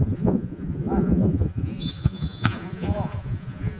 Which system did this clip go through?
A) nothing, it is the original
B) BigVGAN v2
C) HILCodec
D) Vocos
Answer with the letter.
D